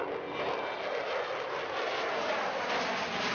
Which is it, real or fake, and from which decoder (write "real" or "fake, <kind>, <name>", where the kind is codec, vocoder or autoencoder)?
real